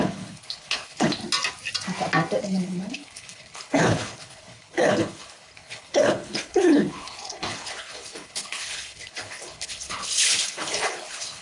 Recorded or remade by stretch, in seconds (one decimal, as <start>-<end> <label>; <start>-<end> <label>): 0.0-1.2 remade; 1.2-2.4 recorded; 2.4-11.4 remade